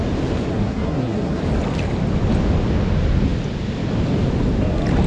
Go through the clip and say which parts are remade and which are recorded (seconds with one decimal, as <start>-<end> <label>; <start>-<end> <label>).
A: 0.0-0.5 recorded; 0.5-1.4 remade; 1.4-5.1 recorded